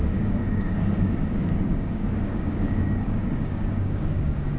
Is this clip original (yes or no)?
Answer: no